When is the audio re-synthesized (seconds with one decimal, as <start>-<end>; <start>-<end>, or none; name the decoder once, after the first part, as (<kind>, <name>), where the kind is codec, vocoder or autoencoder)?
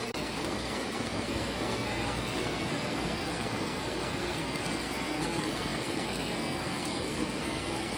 0.0-8.0 (codec, SNAC)